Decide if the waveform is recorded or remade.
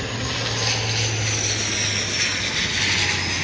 recorded